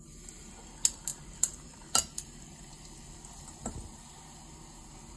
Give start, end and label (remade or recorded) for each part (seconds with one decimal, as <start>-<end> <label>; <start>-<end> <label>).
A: 0.0-1.1 recorded; 1.1-4.2 remade; 4.2-5.2 recorded